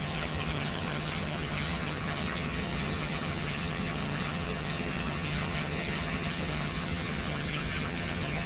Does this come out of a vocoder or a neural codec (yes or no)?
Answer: yes